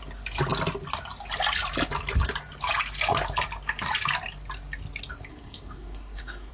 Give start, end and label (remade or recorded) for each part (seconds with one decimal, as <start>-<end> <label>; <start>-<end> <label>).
0.0-5.3 recorded; 5.3-6.5 remade